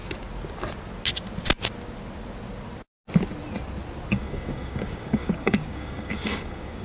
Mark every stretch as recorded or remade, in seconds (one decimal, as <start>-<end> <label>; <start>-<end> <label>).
0.0-4.1 recorded; 4.1-6.8 remade